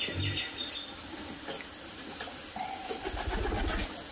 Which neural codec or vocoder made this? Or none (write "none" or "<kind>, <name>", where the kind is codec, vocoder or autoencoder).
none